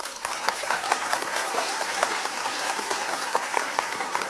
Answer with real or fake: fake